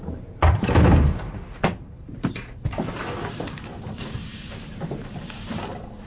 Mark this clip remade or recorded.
remade